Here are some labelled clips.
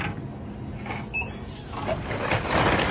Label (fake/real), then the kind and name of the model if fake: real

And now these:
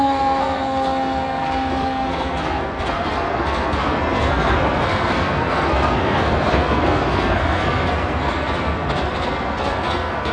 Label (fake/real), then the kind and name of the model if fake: fake, codec, SNAC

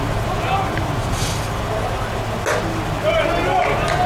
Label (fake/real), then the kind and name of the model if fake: real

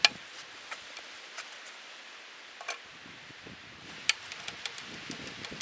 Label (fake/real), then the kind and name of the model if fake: real